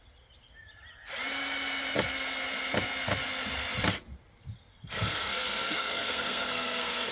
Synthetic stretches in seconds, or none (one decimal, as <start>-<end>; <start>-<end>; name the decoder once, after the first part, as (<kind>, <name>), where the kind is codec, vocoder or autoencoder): 4.7-7.1 (codec, SNAC)